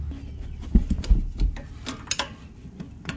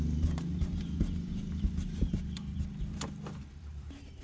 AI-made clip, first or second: second